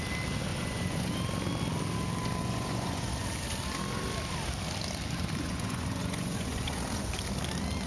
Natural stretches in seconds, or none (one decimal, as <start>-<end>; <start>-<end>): 0.0-0.5; 1.1-2.4; 3.2-5.4; 7.1-7.9